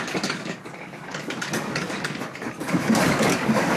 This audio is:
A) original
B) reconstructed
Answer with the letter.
B